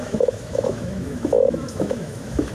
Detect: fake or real fake